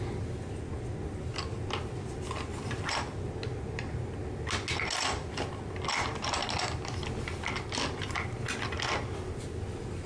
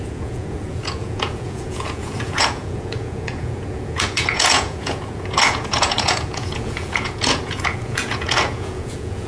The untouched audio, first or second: first